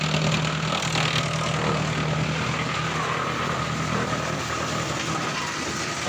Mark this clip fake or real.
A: real